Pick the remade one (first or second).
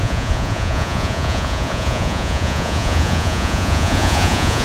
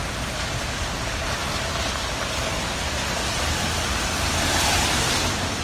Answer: first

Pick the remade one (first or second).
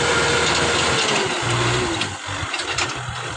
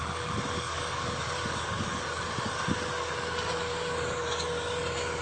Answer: second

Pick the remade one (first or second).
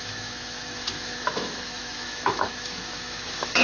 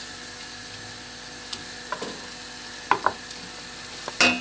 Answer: first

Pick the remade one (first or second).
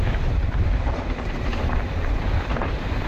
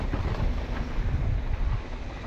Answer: first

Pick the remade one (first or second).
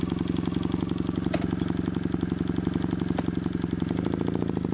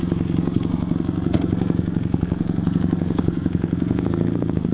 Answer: second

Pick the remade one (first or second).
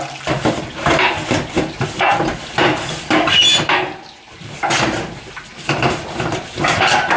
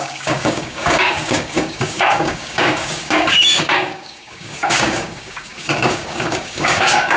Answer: second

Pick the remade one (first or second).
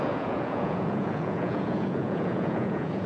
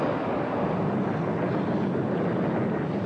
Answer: first